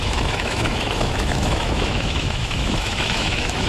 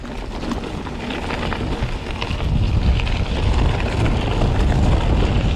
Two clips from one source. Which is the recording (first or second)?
second